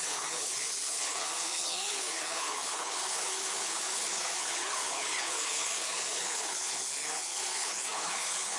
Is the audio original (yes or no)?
no